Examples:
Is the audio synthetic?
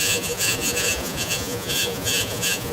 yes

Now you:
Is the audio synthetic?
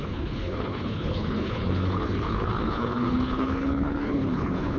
yes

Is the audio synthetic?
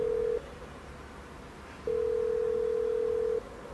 no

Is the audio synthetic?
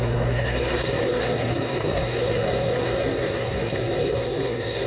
yes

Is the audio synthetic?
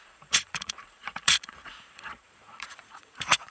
yes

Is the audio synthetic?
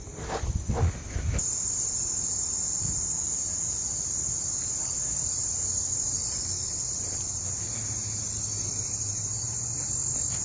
no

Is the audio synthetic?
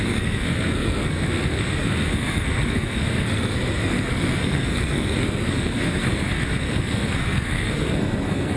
yes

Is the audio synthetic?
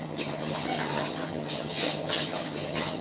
yes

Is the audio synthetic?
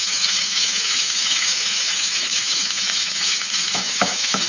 yes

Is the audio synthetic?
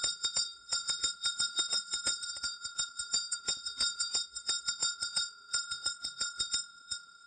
yes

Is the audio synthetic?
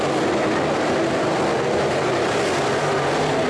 no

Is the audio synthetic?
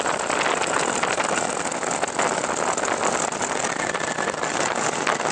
no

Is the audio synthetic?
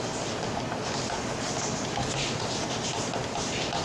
no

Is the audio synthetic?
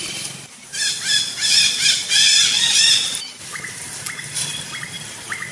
no